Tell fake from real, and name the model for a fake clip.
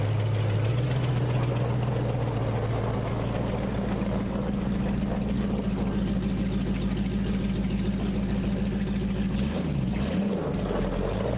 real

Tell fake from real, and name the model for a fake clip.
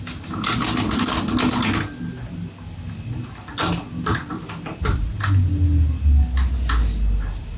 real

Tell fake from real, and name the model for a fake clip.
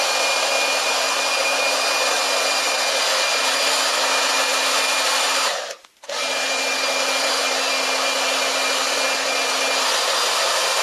real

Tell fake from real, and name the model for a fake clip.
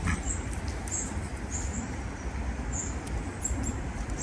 real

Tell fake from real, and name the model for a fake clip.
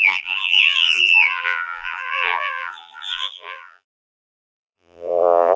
fake, vocoder, BigVGAN v2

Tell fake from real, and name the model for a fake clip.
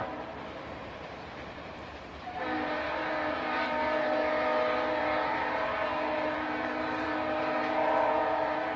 fake, vocoder, BigVGAN v2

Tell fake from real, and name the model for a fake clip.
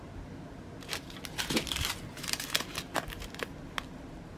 real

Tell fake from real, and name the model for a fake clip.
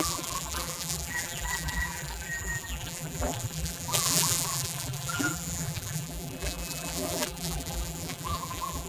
fake, vocoder, BigVGAN v2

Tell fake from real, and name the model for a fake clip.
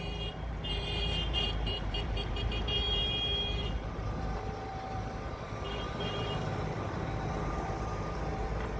fake, vocoder, BigVGAN v2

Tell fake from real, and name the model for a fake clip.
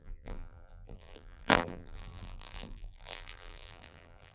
fake, vocoder, BigVGAN v2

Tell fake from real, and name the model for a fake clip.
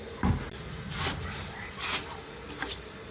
real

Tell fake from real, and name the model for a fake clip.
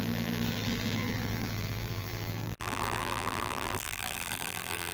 fake, vocoder, BigVGAN v2